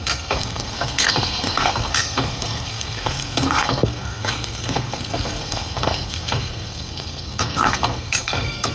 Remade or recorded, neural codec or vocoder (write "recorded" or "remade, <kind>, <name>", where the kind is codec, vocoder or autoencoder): remade, codec, SNAC